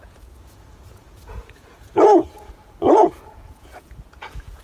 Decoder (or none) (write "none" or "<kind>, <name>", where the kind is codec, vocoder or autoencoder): vocoder, Vocos